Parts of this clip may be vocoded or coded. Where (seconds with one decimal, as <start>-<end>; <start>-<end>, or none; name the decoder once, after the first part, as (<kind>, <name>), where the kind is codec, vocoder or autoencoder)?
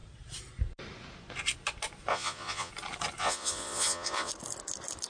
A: 2.1-2.7 (vocoder, Vocos); 3.2-4.3